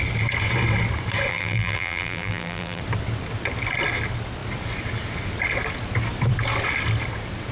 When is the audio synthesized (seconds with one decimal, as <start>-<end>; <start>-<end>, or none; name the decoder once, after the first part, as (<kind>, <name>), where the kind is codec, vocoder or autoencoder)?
1.3-2.8 (vocoder, BigVGAN v2)